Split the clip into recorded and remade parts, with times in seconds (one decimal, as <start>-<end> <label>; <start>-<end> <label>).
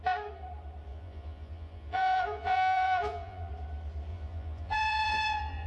0.0-0.9 recorded; 0.9-3.5 remade; 3.5-4.1 recorded; 4.1-5.7 remade